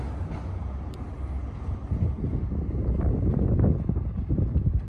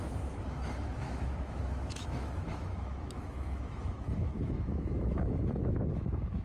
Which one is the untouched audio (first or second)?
first